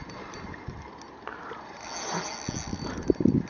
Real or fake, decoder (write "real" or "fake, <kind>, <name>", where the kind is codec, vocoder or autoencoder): real